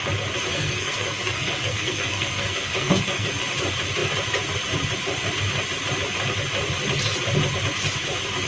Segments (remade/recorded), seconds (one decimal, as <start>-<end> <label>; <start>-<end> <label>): 0.0-0.5 recorded; 0.5-3.4 remade; 3.4-8.5 recorded